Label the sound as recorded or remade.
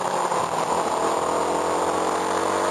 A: recorded